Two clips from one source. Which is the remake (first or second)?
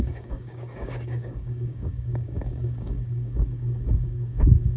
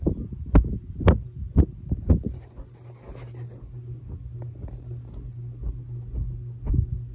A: first